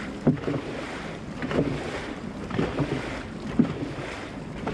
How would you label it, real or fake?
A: real